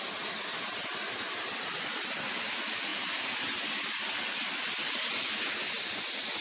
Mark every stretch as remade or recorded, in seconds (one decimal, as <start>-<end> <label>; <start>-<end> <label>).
0.0-6.4 recorded